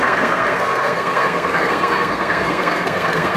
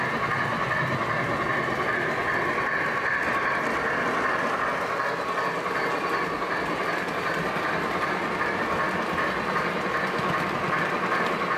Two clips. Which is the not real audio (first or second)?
first